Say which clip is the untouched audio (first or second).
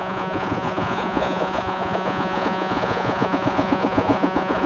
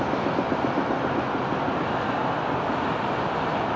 second